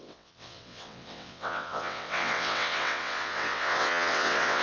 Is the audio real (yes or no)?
no